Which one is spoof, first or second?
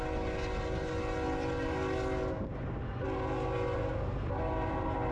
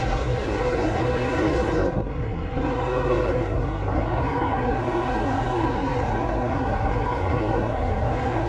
second